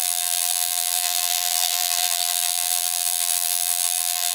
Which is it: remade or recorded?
remade